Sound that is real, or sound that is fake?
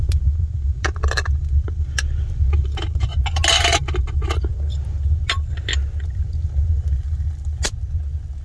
real